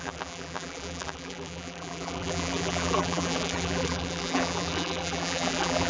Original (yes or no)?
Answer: no